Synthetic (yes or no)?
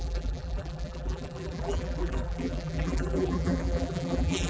yes